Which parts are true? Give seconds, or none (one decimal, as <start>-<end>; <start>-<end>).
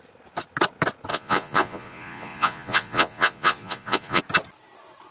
0.0-1.1; 4.2-5.1